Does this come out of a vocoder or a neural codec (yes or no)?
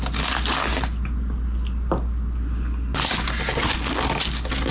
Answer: no